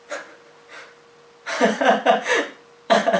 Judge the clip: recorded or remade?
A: remade